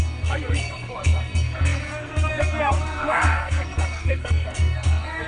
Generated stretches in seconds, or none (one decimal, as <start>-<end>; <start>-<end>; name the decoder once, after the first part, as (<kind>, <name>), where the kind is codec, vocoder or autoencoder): 0.0-5.3 (codec, SNAC)